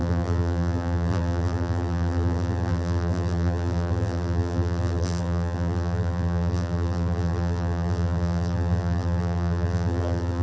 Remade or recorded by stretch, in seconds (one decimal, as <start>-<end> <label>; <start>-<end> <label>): 0.0-10.4 remade